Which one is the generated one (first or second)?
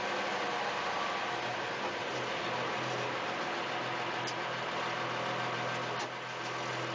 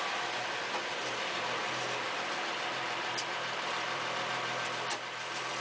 second